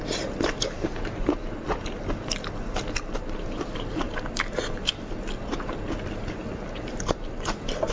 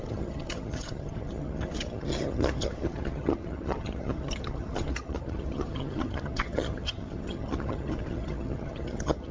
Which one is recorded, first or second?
first